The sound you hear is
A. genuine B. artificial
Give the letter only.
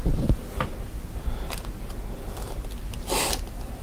A